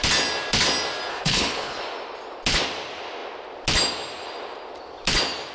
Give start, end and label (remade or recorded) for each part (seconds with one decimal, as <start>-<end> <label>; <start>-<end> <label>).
0.0-1.1 recorded; 1.1-1.8 remade; 1.8-5.5 recorded